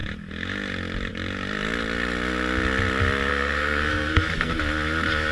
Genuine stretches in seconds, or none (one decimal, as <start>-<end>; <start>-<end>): 0.0-3.3; 4.5-5.3